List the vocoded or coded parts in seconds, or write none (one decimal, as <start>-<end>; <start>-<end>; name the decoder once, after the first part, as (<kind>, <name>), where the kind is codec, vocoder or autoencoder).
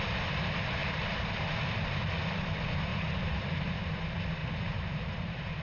0.8-1.5 (vocoder, BigVGAN v2); 2.9-3.9; 4.4-5.6